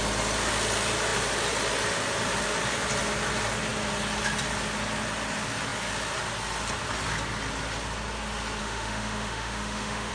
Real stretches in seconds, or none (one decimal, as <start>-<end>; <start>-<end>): 0.0-8.6